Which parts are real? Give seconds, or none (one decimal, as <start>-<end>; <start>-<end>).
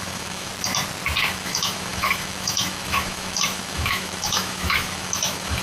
0.5-1.3